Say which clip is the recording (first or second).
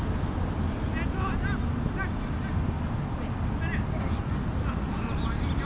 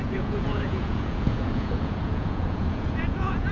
first